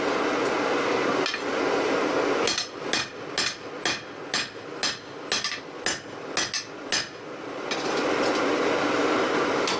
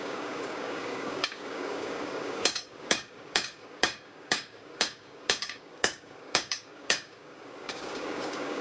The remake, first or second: second